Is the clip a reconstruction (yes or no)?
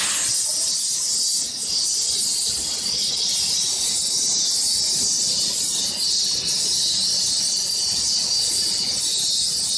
no